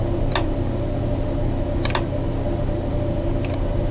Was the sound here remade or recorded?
recorded